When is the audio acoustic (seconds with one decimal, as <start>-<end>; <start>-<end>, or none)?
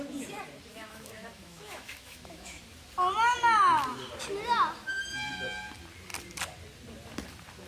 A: 0.0-0.7; 2.6-7.7